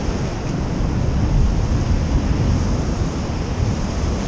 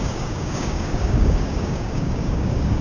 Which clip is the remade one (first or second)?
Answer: second